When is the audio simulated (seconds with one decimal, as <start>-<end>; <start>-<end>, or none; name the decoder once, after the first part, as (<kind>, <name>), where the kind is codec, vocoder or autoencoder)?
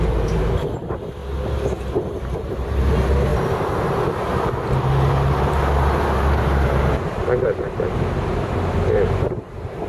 0.0-1.2 (vocoder, BigVGAN v2); 2.2-3.3; 7.4-9.9